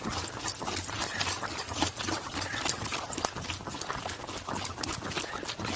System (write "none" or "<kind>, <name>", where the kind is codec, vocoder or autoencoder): none